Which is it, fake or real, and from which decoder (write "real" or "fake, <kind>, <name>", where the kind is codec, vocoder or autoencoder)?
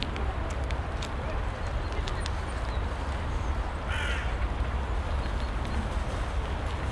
real